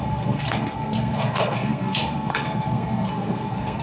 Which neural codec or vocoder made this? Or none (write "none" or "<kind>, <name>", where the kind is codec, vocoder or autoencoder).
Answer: codec, SNAC